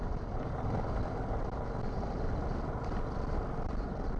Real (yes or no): yes